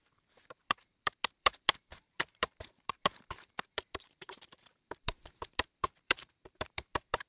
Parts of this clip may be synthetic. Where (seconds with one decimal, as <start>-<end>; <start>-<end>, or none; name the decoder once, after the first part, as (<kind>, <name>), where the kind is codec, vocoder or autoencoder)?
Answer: 0.0-7.3 (vocoder, BigVGAN v2)